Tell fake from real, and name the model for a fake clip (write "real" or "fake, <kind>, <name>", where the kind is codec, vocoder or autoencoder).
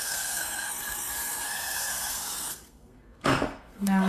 fake, codec, SNAC